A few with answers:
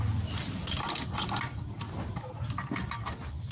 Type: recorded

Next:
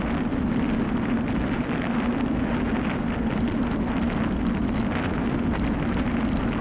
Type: recorded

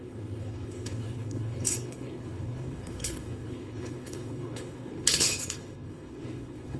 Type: remade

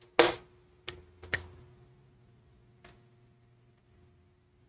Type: recorded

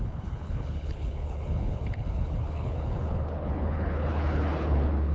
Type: remade